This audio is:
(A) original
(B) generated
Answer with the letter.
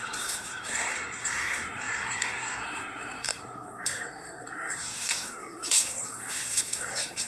B